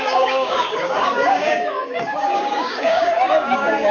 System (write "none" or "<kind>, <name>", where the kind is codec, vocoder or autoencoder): codec, DAC